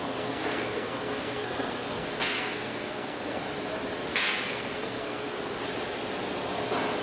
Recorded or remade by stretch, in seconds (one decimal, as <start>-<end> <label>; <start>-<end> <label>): 0.0-3.4 remade; 3.4-4.1 recorded; 4.1-5.6 remade; 5.6-7.0 recorded